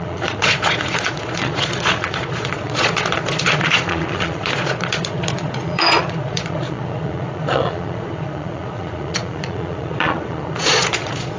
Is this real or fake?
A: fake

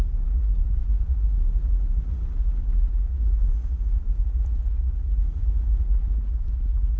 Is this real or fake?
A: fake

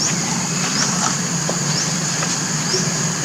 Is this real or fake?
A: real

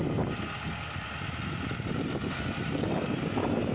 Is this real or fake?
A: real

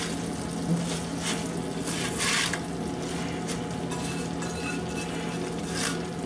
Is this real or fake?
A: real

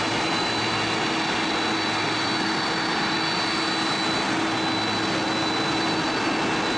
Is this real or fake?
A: real